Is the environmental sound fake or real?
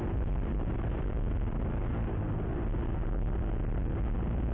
real